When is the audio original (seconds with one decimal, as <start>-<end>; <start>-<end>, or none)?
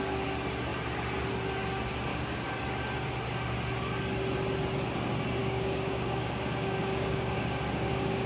0.0-2.1; 2.6-5.4